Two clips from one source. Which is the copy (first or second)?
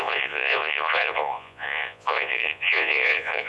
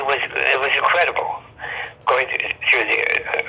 first